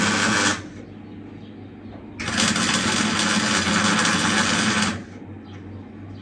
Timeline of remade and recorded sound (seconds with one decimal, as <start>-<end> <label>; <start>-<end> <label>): 0.0-6.2 recorded